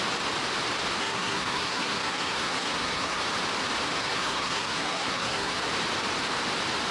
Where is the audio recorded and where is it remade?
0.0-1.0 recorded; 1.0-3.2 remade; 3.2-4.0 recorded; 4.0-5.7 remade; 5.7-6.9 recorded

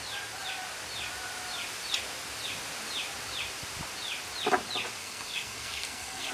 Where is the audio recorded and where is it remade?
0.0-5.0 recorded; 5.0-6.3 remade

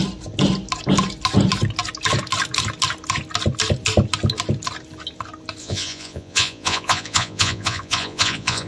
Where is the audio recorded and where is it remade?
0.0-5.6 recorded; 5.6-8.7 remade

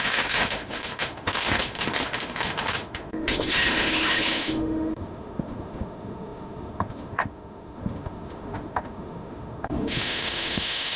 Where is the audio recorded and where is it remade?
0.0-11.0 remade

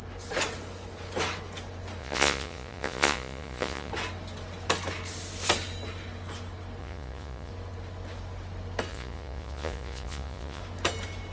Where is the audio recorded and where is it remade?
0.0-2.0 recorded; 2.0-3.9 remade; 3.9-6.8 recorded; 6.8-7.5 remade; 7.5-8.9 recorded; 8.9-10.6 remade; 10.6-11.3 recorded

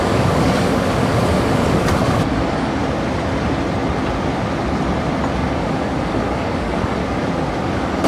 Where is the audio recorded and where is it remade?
0.0-2.8 remade; 2.8-5.5 recorded; 5.5-7.0 remade; 7.0-7.6 recorded; 7.6-8.1 remade

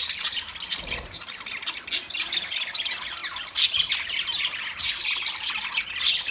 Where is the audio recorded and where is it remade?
0.0-6.3 recorded

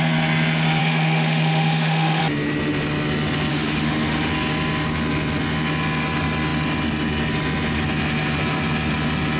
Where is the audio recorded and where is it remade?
0.0-0.8 recorded; 0.8-2.2 remade; 2.2-3.5 recorded; 3.5-4.3 remade; 4.3-9.4 recorded